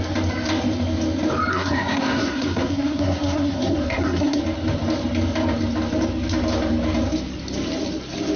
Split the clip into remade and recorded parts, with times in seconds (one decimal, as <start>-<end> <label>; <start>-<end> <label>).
0.0-1.5 recorded; 1.5-4.4 remade; 4.4-8.4 recorded